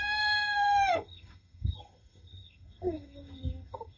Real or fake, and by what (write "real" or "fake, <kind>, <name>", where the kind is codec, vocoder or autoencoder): fake, codec, SNAC